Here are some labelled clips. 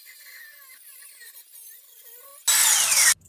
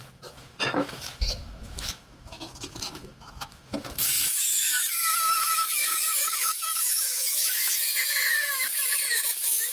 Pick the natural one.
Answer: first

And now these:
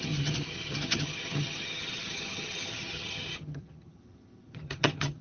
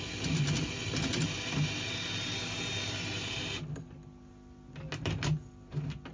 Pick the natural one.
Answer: second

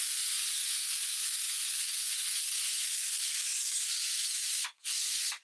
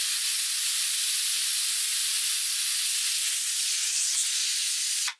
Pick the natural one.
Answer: second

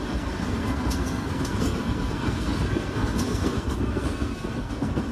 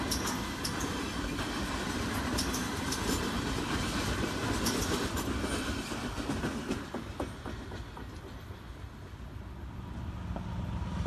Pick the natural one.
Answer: second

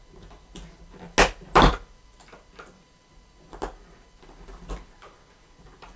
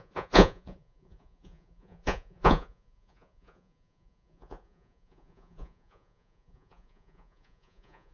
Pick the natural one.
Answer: first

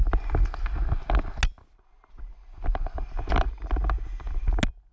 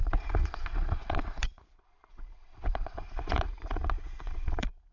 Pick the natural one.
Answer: first